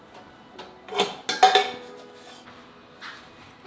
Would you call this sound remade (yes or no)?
no